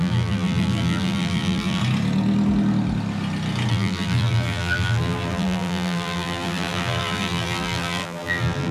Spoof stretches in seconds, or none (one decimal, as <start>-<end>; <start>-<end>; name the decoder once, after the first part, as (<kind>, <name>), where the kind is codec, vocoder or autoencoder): 0.0-1.8 (vocoder, BigVGAN v2); 3.7-8.7